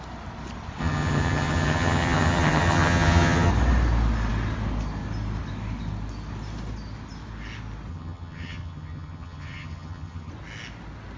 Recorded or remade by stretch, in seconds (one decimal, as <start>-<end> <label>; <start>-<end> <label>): 0.0-0.8 recorded; 0.8-3.5 remade; 3.5-7.9 recorded; 7.9-10.3 remade; 10.3-11.2 recorded